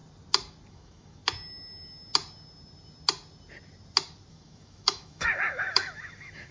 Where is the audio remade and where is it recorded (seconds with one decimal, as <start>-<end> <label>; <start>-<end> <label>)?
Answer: 0.0-0.7 recorded; 0.7-1.2 remade; 1.2-4.3 recorded; 4.3-6.5 remade